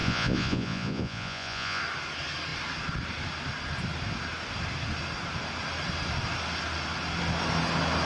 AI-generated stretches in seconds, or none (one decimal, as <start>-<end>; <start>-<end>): 0.0-1.8